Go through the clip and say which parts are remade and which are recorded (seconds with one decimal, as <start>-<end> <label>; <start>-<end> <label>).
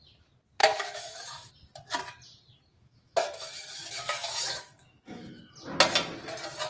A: 0.0-0.6 recorded; 0.6-1.5 remade; 1.5-2.7 recorded; 2.7-5.4 remade; 5.4-6.7 recorded